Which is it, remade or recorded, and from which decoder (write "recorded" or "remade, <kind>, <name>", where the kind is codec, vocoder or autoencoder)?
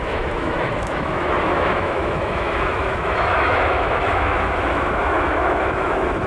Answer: remade, autoencoder, DAC-VAE